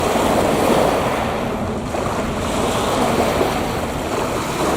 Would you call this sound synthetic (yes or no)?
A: no